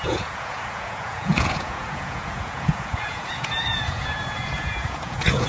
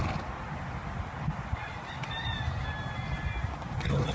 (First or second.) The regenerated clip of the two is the first